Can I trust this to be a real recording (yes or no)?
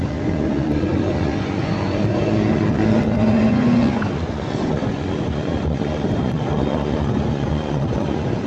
no